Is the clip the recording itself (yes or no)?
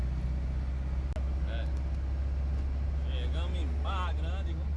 yes